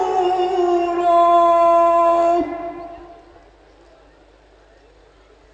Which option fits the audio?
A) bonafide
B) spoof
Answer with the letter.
A